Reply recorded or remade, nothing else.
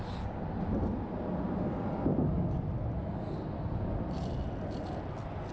recorded